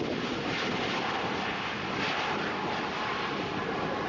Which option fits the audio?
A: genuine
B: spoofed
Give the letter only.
A